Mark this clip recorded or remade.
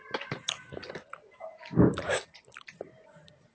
recorded